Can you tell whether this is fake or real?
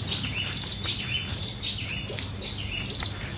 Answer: real